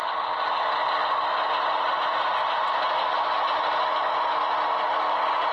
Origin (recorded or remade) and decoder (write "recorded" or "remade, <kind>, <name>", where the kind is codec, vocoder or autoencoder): recorded